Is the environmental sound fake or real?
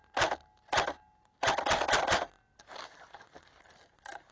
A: real